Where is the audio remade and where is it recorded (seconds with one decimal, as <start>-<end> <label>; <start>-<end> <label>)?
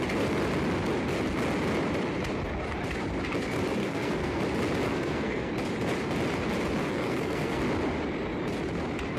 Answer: 0.0-3.8 recorded; 3.8-4.4 remade; 4.4-4.9 recorded; 4.9-5.5 remade; 5.5-6.8 recorded; 6.8-7.6 remade; 7.6-9.2 recorded